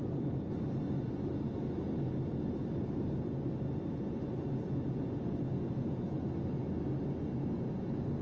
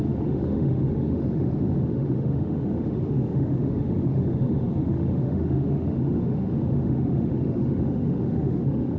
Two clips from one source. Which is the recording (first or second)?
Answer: first